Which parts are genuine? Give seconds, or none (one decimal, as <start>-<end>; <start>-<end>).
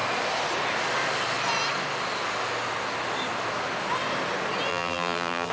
0.0-4.7